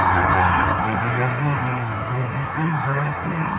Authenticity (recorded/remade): remade